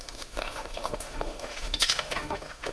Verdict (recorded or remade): remade